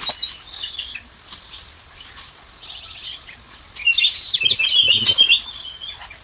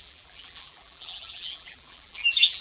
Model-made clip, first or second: second